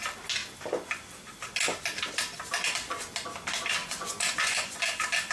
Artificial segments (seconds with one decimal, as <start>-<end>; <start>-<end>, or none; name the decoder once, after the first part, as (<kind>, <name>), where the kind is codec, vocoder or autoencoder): 3.8-4.8 (vocoder, Vocos)